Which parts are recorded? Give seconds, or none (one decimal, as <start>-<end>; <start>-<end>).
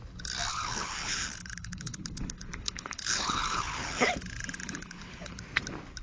0.0-0.5; 4.1-4.6; 5.4-6.0